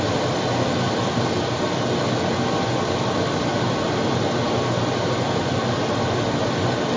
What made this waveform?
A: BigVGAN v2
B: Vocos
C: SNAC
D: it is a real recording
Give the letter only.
D